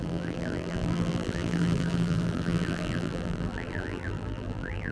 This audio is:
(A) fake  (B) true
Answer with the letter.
A